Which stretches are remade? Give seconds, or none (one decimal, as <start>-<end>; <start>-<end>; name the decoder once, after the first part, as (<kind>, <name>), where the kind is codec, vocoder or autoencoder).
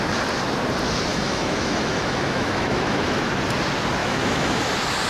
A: 1.1-3.3 (autoencoder, DAC-VAE); 4.0-4.6